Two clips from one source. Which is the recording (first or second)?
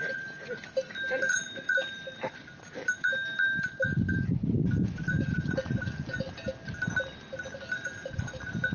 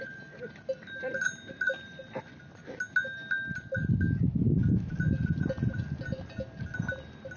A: second